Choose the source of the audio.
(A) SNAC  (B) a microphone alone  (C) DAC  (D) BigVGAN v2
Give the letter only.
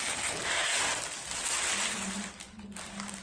B